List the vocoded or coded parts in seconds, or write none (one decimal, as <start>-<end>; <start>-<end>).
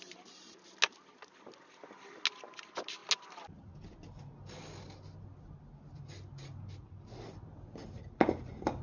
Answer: none